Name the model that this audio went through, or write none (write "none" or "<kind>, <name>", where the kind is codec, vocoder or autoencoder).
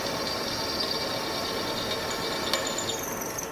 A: none